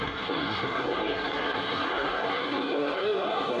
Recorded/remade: remade